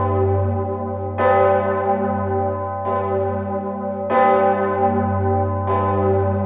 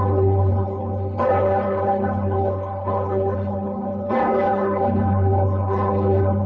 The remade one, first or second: second